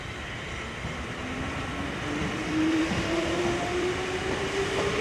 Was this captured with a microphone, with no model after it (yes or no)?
no